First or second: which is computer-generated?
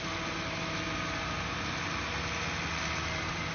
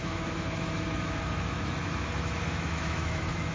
second